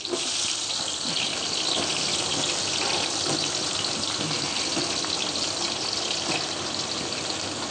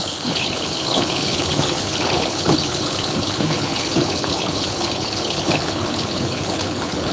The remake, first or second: second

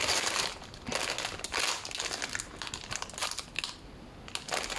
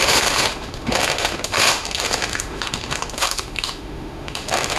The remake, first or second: second